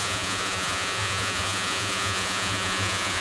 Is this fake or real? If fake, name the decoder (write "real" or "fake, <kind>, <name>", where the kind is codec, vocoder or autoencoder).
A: fake, vocoder, Vocos